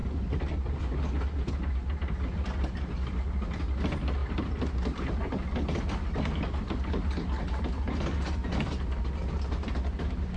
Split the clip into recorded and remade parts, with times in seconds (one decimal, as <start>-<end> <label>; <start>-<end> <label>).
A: 0.0-4.2 recorded; 4.2-5.8 remade; 5.8-10.4 recorded